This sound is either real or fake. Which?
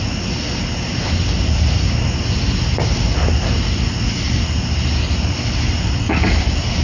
real